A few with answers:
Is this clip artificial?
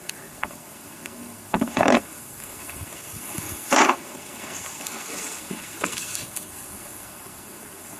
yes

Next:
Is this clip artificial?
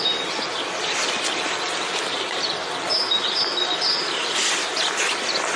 no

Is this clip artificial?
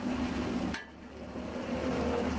no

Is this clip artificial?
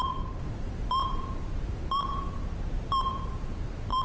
yes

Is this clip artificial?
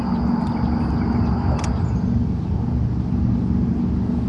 no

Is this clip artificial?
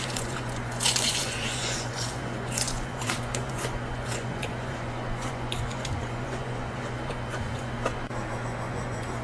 yes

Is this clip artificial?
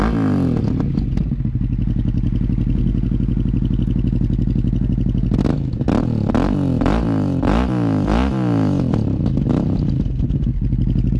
no